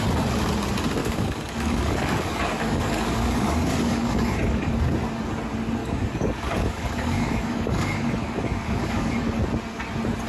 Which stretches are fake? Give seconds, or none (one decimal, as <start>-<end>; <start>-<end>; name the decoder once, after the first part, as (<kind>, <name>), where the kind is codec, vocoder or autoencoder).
1.0-4.7 (codec, DAC); 5.8-9.4